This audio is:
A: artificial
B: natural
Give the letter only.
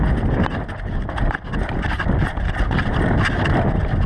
B